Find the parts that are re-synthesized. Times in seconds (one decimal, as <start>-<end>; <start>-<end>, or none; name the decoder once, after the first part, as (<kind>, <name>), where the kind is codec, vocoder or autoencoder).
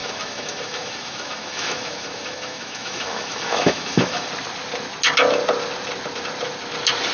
0.0-4.3 (autoencoder, DAC-VAE)